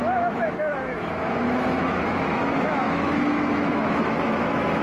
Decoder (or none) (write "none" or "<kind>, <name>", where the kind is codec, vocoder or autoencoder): autoencoder, DAC-VAE